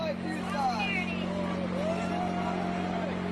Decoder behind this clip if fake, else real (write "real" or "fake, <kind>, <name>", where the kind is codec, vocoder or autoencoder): real